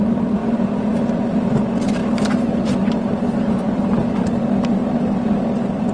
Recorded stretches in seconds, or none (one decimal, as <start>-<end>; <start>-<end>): 0.0-2.0; 3.8-5.9